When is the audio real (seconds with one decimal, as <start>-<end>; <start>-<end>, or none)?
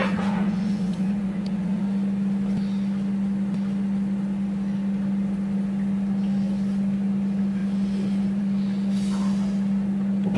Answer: 1.8-10.4